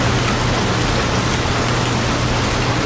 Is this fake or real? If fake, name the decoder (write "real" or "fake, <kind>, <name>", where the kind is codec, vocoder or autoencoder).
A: real